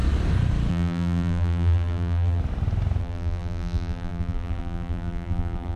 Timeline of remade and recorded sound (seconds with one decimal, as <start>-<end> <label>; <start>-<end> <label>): 0.0-0.7 recorded; 0.7-2.4 remade; 2.4-3.0 recorded; 3.0-5.8 remade